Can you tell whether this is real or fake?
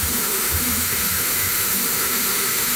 fake